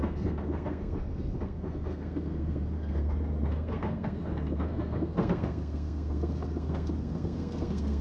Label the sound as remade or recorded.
remade